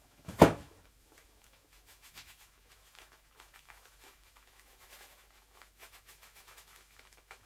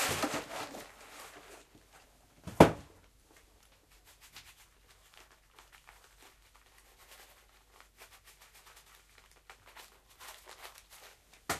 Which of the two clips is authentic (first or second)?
second